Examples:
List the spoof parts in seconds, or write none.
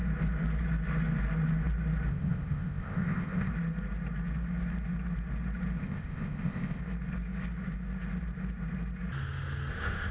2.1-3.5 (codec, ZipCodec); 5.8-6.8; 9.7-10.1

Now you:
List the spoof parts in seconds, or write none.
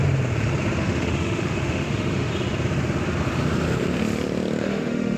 0.8-2.3 (autoencoder, DAC-VAE); 4.6-5.2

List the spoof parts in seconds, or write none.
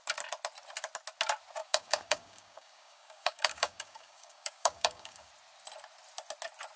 1.6-5.3 (codec, DAC)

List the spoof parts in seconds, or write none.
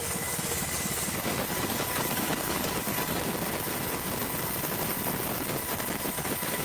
0.0-2.9 (codec, DAC); 6.1-6.6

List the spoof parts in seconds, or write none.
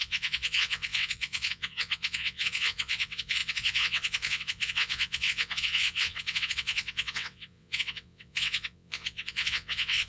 0.0-10.1 (vocoder, WaveNeXt)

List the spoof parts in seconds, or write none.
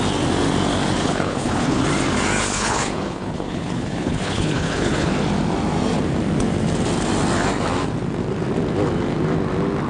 1.0-1.8 (codec, HILCodec); 2.4-5.1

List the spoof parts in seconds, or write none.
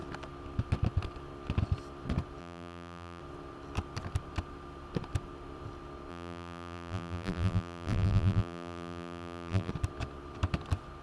2.4-3.2 (vocoder, BigVGAN v2); 6.1-9.7